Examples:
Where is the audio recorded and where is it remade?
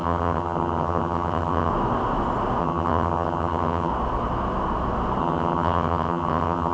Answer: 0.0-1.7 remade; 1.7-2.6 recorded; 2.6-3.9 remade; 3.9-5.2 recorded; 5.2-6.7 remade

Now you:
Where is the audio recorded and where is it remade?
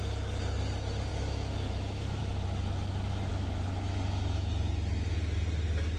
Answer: 0.0-1.1 recorded; 1.1-2.2 remade; 2.2-3.3 recorded; 3.3-4.5 remade; 4.5-6.0 recorded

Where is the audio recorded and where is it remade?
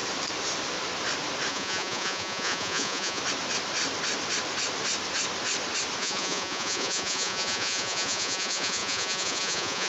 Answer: 0.0-1.5 recorded; 1.5-3.2 remade; 3.2-6.0 recorded; 6.0-9.9 remade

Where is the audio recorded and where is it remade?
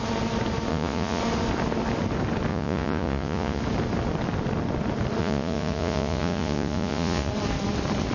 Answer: 0.0-0.7 recorded; 0.7-1.2 remade; 1.2-2.5 recorded; 2.5-3.6 remade; 3.6-5.2 recorded; 5.2-7.3 remade; 7.3-8.1 recorded